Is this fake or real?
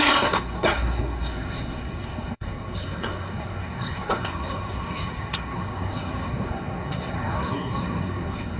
fake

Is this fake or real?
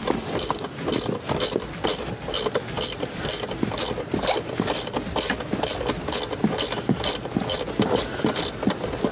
real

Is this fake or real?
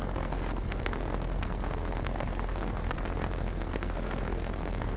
fake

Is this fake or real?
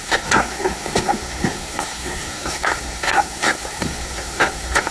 fake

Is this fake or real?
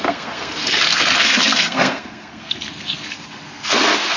fake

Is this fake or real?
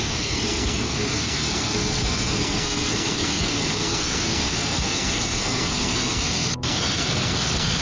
fake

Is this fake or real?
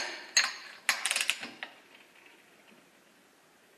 real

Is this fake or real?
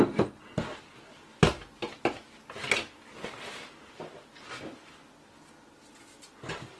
real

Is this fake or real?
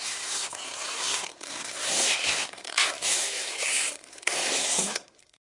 fake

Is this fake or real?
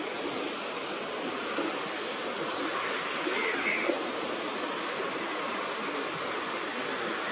real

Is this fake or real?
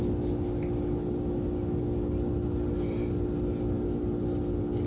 real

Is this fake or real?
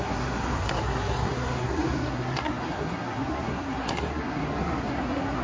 fake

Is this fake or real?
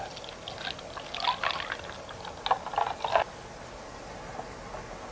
real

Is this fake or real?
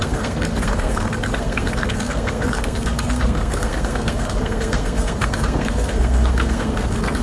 fake